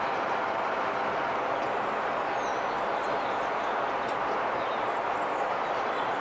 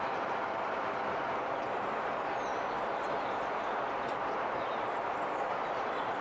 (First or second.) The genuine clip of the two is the first